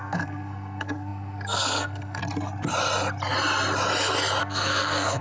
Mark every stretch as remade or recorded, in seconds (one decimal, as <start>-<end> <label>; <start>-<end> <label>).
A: 0.0-2.2 remade; 2.2-4.4 recorded; 4.4-5.2 remade